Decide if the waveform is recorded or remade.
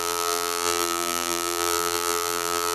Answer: remade